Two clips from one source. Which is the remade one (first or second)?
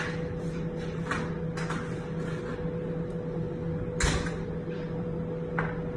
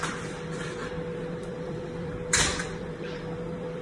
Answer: second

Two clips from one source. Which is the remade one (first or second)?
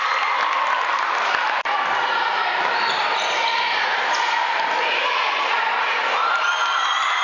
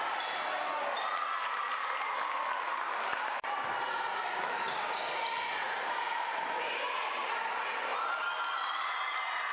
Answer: first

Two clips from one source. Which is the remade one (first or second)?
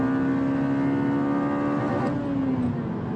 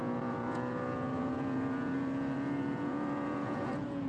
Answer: second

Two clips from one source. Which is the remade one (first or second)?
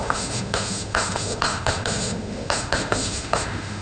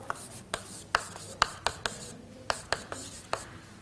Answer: first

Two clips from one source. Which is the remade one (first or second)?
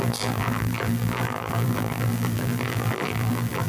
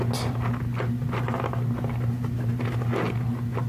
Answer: first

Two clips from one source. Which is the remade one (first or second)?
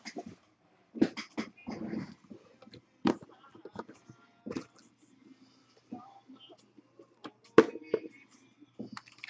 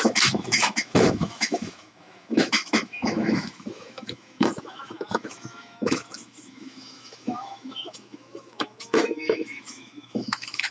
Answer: second